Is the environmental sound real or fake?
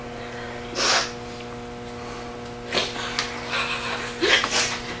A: real